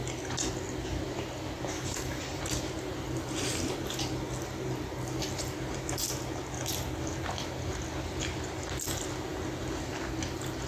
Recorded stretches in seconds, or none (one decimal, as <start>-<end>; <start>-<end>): 0.0-1.7; 2.4-10.7